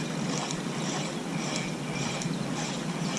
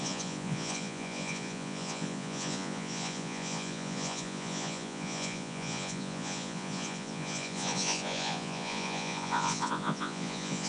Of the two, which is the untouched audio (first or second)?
first